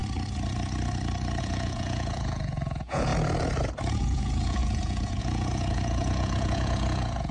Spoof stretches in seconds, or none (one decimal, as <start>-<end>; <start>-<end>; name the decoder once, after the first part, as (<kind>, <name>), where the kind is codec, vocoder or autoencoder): 1.4-3.1 (vocoder, Vocos); 3.9-7.3